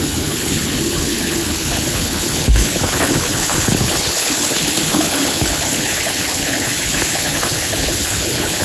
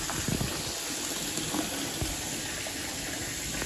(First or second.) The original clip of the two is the second